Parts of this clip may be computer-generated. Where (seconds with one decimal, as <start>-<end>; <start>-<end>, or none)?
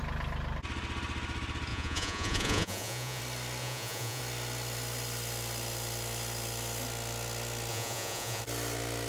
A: 1.7-3.2; 3.6-4.2; 7.7-8.4